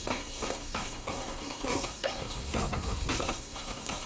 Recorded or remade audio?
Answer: remade